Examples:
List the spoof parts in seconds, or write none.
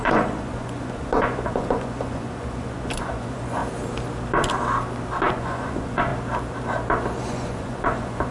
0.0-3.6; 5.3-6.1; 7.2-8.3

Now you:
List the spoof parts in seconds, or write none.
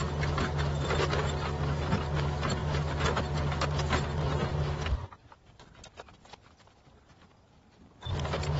none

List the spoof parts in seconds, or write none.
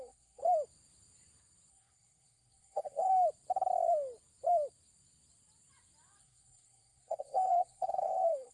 0.0-0.4; 1.7-3.1; 6.2-8.5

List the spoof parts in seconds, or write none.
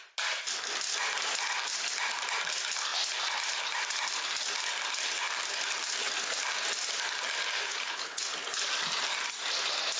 7.6-8.2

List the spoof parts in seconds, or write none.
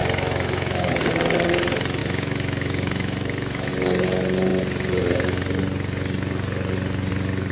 0.0-0.9; 2.0-3.7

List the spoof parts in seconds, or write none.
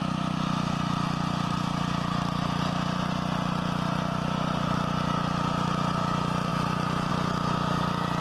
none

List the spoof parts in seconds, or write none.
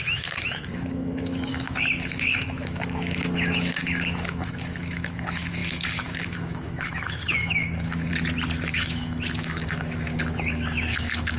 0.0-8.1; 8.7-11.4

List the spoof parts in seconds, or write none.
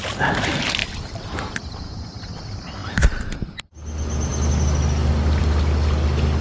none